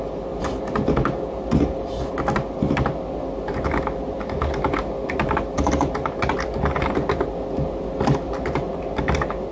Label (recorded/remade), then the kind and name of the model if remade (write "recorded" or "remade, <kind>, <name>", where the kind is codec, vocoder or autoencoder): recorded